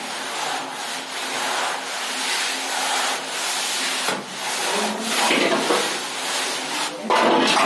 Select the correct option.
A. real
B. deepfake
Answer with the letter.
A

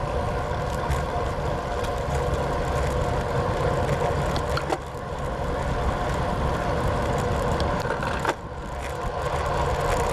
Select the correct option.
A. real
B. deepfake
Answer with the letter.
A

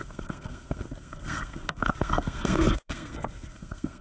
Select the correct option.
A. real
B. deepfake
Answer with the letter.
B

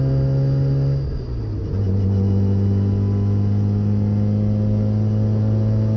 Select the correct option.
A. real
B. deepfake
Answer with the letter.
A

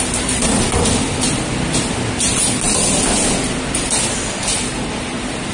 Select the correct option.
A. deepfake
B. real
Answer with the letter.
B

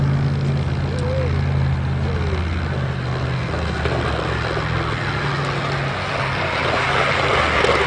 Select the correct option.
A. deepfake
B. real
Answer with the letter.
B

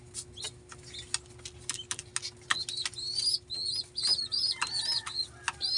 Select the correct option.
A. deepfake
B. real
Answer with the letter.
B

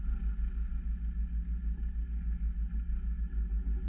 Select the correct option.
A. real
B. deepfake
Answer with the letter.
A